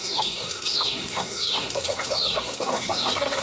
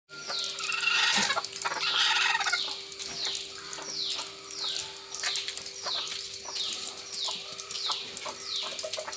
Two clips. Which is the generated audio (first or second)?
first